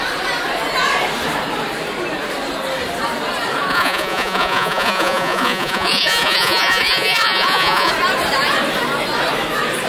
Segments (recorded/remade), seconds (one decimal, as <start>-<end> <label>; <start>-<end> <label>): 0.0-3.7 recorded; 3.7-7.9 remade; 7.9-9.9 recorded